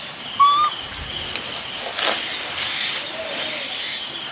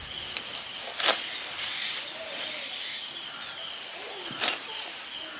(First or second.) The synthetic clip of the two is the second